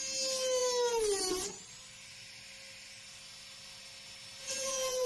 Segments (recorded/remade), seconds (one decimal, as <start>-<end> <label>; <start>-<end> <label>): 0.0-4.4 recorded; 4.4-5.1 remade